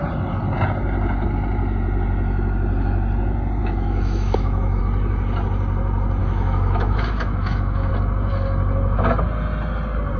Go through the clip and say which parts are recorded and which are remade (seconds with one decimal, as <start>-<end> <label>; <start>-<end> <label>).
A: 0.0-3.6 recorded; 3.6-4.8 remade; 4.8-6.2 recorded; 6.2-7.9 remade; 7.9-10.2 recorded